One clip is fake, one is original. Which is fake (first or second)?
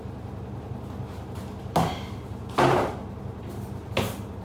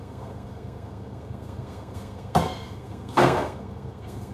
second